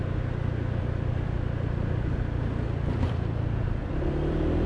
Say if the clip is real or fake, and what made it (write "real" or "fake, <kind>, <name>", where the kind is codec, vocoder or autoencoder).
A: real